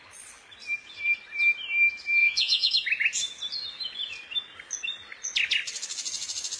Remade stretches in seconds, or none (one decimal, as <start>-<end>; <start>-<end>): 2.2-2.7